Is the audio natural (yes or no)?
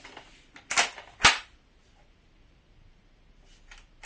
yes